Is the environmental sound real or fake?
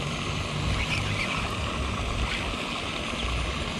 real